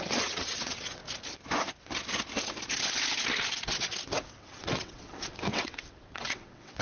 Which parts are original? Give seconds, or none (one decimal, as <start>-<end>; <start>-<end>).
1.0-4.3